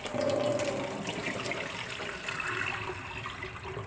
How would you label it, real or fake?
real